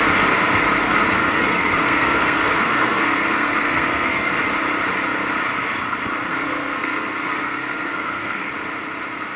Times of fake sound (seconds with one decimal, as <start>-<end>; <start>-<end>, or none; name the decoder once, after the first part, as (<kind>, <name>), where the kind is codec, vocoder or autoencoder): 1.2-4.4 (codec, SNAC); 6.3-8.5